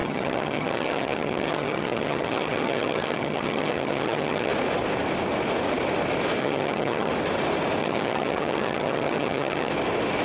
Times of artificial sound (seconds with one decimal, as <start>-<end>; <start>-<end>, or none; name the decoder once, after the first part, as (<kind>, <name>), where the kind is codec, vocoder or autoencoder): 0.0-4.5 (vocoder, HiFi-GAN); 6.4-7.1; 7.8-9.7